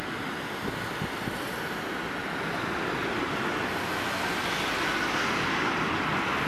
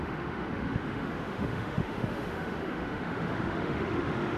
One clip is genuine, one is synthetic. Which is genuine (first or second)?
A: first